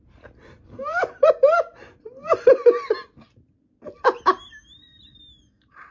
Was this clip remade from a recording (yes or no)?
no